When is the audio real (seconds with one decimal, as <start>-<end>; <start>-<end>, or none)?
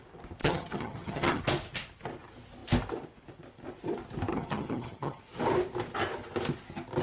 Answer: 0.0-0.4; 1.4-4.3; 5.2-7.0